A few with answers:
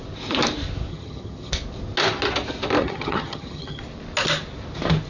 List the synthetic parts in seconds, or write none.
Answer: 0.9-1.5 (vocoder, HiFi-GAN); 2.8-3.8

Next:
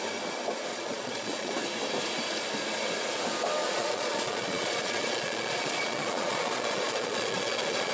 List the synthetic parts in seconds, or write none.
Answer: 0.7-1.5 (vocoder, Vocos); 3.6-7.9

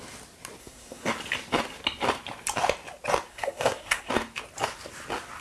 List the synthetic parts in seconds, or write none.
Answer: 0.6-1.1 (codec, SNAC); 3.3-4.1

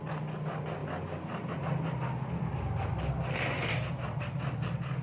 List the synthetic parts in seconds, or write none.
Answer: none

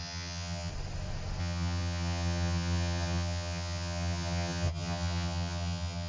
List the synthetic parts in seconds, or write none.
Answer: 0.0-0.7 (vocoder, HiFi-GAN); 1.4-6.1